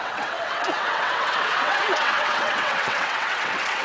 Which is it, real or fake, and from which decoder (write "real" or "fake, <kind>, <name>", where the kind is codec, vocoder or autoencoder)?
fake, vocoder, WaveNeXt